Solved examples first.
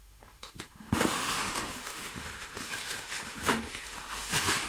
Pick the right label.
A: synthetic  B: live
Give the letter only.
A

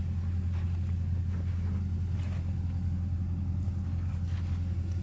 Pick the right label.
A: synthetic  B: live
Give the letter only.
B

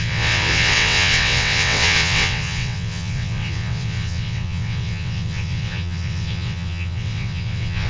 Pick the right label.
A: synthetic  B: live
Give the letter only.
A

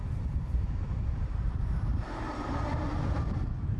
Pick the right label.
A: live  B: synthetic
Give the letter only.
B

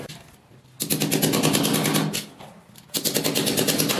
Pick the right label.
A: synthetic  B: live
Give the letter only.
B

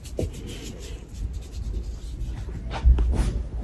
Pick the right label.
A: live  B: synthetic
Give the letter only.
A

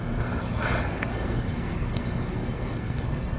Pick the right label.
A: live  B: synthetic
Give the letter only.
B